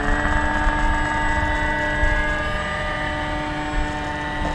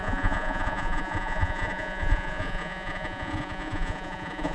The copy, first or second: second